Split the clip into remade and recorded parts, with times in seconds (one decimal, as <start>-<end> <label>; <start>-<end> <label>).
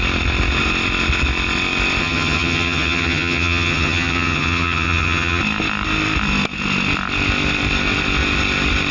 0.0-2.0 recorded; 2.0-5.4 remade; 5.4-8.9 recorded